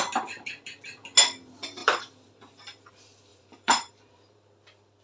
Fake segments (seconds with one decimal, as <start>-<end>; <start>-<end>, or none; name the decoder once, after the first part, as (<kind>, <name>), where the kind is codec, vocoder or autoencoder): 1.8-2.9 (vocoder, BigVGAN v2); 3.3-4.5